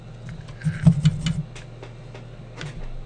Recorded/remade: recorded